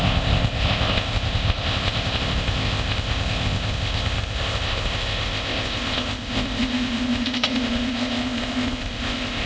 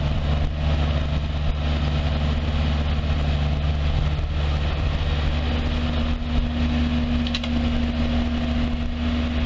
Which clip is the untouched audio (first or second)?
second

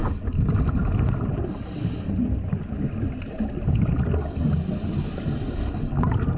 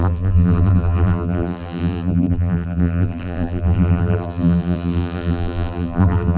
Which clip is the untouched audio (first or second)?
first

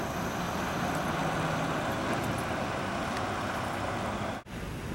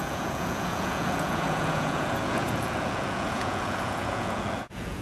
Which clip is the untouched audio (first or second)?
first